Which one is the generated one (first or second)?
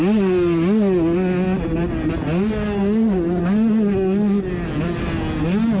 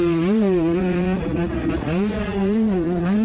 second